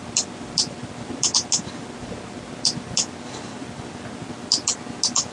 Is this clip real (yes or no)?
yes